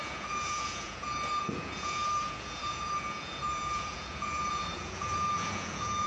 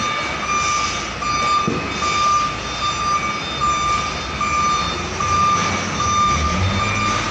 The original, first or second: second